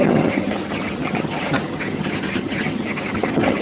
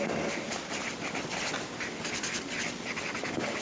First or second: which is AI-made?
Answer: first